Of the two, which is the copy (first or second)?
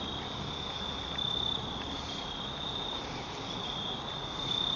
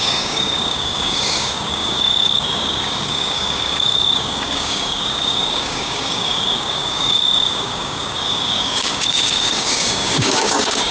second